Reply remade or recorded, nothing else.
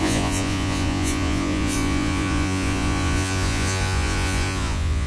remade